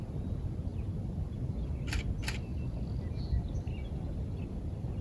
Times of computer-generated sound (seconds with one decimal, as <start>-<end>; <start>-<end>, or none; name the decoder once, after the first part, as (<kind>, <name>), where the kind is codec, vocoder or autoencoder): none